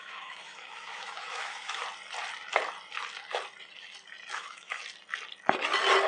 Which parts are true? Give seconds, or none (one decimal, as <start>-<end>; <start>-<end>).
1.8-4.3; 4.8-6.1